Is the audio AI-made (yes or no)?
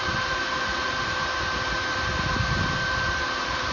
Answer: yes